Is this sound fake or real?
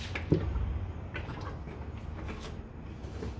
real